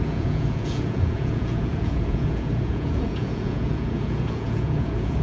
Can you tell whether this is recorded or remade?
remade